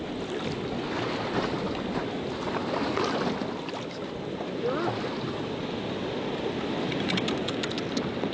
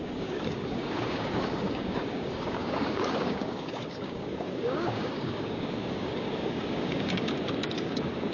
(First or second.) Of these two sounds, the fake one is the second